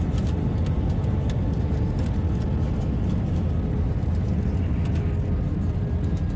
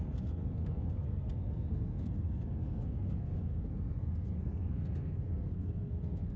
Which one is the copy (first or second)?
second